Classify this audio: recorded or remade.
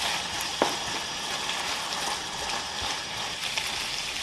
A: recorded